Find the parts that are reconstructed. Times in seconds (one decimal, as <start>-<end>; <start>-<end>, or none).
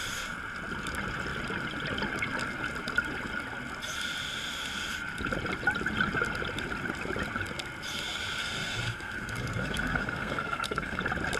8.4-11.0